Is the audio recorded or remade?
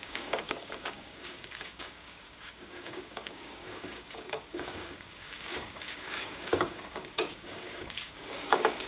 remade